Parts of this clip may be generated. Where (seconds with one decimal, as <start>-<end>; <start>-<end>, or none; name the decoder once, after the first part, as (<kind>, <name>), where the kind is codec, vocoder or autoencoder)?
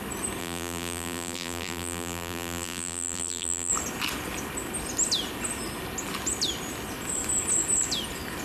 0.4-3.7 (vocoder, BigVGAN v2)